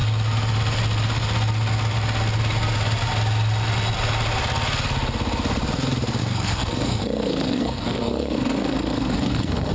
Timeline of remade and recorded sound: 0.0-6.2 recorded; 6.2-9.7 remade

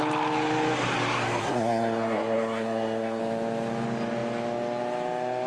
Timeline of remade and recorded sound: 0.0-1.4 recorded; 1.4-3.2 remade; 3.2-5.5 recorded

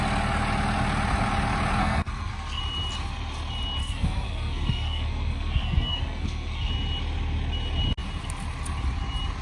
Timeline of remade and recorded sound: 0.0-1.8 recorded; 1.8-2.6 remade; 2.6-3.8 recorded; 3.8-6.7 remade; 6.7-9.4 recorded